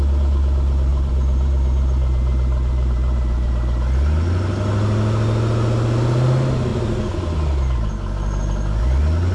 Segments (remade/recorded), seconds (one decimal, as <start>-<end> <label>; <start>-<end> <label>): 0.0-0.9 recorded; 0.9-3.5 remade; 3.5-9.3 recorded